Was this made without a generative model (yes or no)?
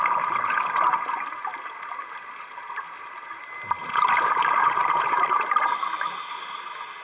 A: yes